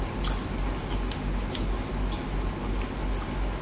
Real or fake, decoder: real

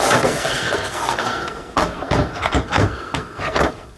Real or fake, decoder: fake, codec, SNAC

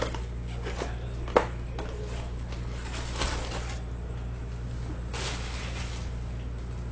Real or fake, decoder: real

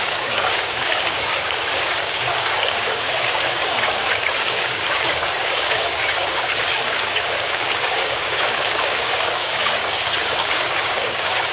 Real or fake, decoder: fake, codec, DAC